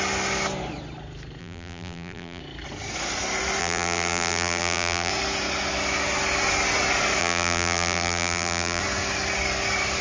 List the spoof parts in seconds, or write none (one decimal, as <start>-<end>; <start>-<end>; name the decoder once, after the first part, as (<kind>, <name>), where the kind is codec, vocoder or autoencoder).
1.4-2.4 (vocoder, BigVGAN v2); 3.6-5.1; 7.2-8.8

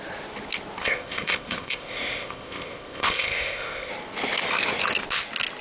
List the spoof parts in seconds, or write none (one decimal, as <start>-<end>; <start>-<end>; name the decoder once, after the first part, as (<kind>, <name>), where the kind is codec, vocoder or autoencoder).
0.8-3.9 (codec, ZipCodec)